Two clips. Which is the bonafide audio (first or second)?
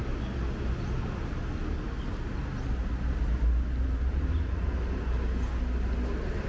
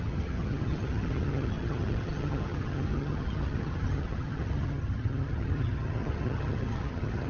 first